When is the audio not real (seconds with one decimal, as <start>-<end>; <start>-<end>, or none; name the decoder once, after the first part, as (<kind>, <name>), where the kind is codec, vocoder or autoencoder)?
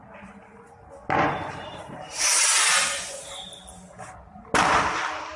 2.5-3.2 (vocoder, Vocos)